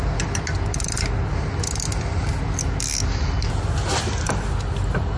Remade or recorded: recorded